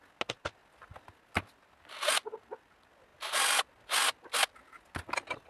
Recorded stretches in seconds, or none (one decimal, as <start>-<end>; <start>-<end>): 0.0-5.5